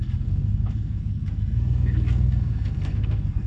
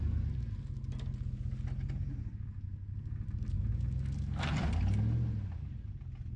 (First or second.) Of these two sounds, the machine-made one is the first